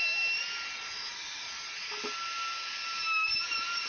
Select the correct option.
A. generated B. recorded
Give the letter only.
B